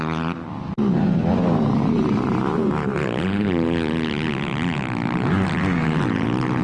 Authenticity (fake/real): fake